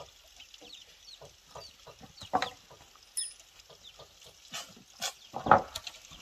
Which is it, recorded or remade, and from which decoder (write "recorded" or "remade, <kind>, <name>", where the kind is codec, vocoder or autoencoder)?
recorded